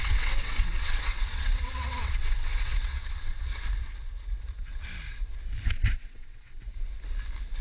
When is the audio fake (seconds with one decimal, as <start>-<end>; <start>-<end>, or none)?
0.0-3.5; 5.9-6.6